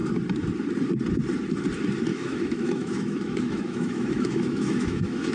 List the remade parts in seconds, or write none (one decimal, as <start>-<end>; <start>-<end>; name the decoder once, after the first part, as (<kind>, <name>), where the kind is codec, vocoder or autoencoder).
2.1-5.3 (autoencoder, DAC-VAE)